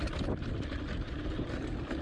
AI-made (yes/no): no